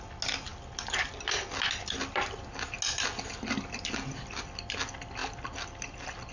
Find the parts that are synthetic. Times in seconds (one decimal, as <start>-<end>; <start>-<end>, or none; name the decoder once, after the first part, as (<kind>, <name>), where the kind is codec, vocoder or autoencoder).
none